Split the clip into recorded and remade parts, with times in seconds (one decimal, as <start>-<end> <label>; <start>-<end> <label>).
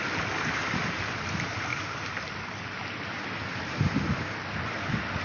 0.0-5.2 recorded